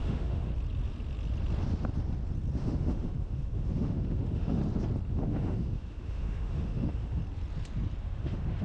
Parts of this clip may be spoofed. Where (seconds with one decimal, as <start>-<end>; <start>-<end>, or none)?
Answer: 0.0-0.5; 2.6-4.6; 5.1-7.2; 8.0-8.6